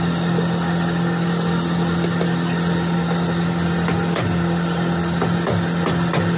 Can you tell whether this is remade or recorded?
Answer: recorded